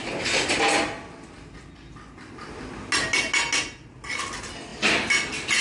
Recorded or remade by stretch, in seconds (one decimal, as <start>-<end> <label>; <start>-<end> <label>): 0.0-5.6 recorded